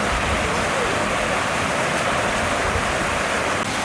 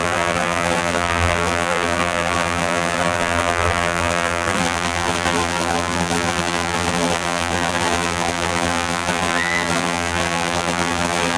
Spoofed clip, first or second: second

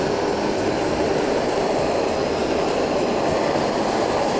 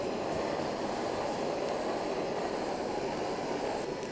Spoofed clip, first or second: first